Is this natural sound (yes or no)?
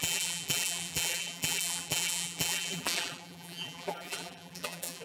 no